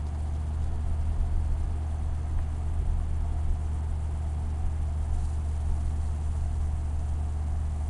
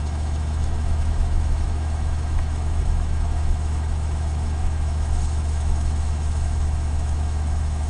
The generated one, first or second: second